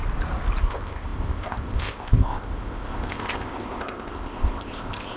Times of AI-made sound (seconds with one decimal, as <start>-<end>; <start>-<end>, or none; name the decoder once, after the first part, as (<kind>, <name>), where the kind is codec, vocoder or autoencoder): 0.6-5.2 (codec, ZipCodec)